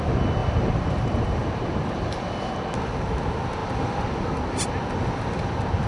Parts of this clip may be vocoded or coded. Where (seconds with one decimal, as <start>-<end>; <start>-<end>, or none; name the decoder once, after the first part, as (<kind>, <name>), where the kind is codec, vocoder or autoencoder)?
0.4-2.2 (vocoder, BigVGAN v2)